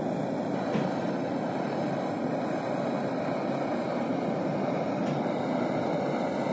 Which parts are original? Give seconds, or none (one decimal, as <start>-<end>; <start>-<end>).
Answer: 0.0-6.5